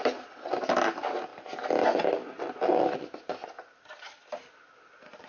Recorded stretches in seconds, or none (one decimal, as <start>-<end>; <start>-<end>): 0.0-5.3